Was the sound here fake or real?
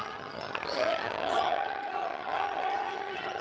fake